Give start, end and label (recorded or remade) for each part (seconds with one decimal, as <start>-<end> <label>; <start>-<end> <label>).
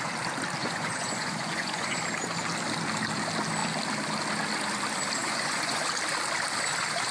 0.0-0.6 recorded; 0.6-2.0 remade; 2.0-5.2 recorded; 5.2-5.8 remade; 5.8-7.1 recorded